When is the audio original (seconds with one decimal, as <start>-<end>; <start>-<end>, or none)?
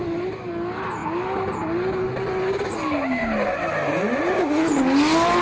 0.0-5.4